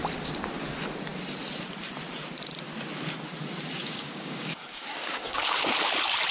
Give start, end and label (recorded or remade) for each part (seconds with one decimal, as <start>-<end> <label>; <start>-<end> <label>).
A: 0.0-3.8 recorded; 3.8-5.7 remade; 5.7-6.3 recorded